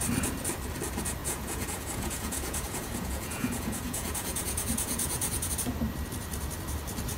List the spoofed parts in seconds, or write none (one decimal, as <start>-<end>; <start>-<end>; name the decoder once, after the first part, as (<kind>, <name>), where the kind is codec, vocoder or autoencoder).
1.2-5.5 (vocoder, Vocos)